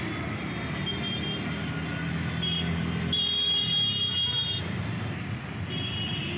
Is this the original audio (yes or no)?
yes